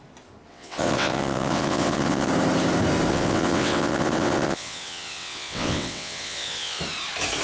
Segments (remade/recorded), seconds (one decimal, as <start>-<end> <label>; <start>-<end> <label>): 0.0-0.5 recorded; 0.5-2.3 remade; 2.3-3.1 recorded; 3.1-6.8 remade; 6.8-7.4 recorded